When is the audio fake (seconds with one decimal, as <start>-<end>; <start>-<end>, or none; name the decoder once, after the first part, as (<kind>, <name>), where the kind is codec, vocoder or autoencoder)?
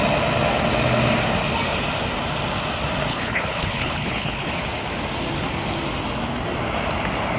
3.1-4.5 (codec, HILCodec)